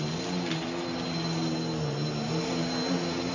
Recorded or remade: recorded